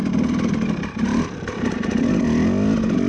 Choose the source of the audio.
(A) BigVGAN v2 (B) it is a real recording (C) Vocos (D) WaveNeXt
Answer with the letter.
B